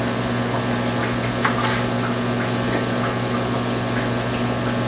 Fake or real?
real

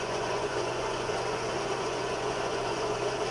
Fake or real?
fake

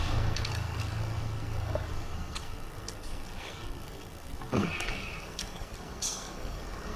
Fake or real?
fake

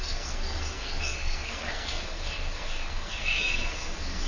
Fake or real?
fake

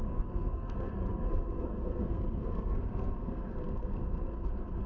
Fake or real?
fake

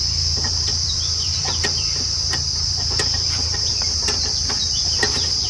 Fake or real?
fake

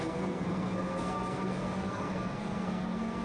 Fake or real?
fake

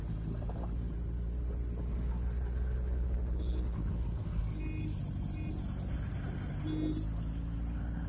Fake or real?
real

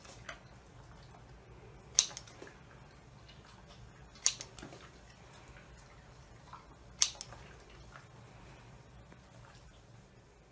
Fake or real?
real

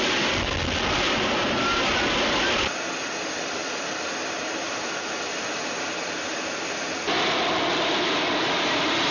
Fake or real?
real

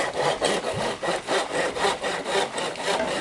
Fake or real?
real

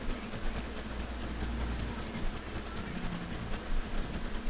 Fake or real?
real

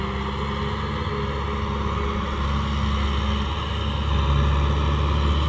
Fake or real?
real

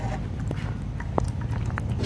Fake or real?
real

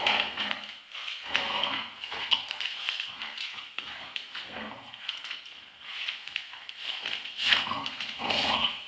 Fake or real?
fake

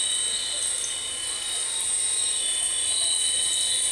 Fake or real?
real